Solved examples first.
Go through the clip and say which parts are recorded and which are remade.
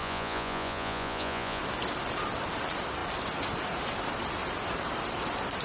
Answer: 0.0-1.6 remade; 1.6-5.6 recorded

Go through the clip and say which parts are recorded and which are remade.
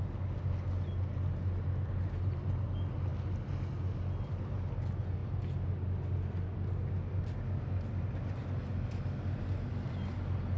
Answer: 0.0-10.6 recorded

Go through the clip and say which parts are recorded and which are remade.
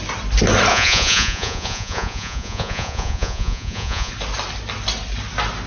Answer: 0.0-0.7 recorded; 0.7-4.1 remade; 4.1-5.7 recorded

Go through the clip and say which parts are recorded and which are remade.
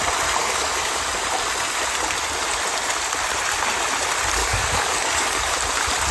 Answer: 0.0-0.4 recorded; 0.4-1.0 remade; 1.0-4.4 recorded; 4.4-5.5 remade; 5.5-6.1 recorded